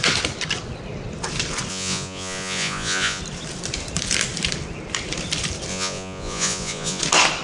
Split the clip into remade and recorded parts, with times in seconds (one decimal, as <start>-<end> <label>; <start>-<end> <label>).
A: 0.0-1.7 recorded; 1.7-3.2 remade; 3.2-5.7 recorded; 5.7-7.0 remade; 7.0-7.4 recorded